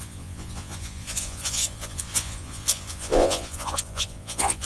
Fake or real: fake